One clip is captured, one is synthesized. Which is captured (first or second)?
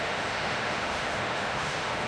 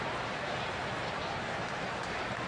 second